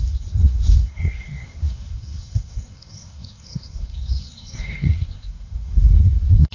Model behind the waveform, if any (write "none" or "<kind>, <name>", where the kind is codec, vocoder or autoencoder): codec, SNAC